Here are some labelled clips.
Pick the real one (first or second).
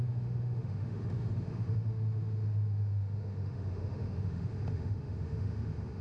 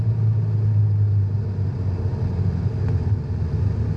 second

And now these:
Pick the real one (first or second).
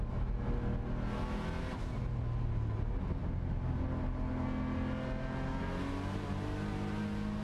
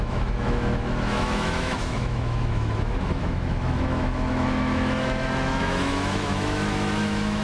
first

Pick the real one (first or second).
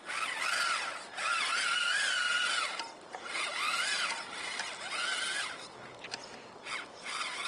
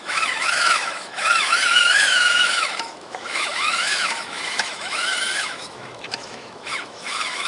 first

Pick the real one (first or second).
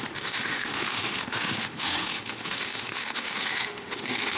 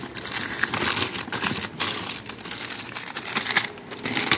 second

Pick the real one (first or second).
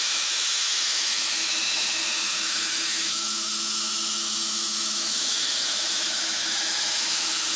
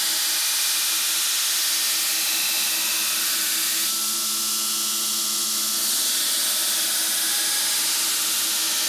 second